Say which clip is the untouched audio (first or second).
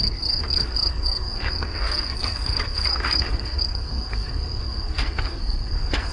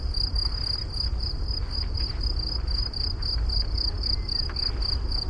second